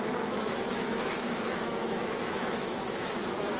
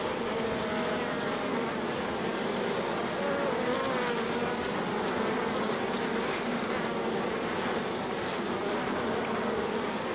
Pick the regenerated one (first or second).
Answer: first